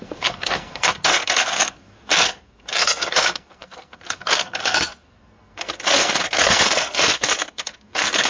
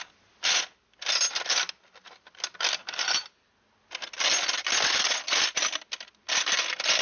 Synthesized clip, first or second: first